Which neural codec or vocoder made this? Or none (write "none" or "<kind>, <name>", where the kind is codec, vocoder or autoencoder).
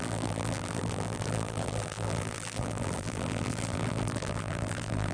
vocoder, BigVGAN v2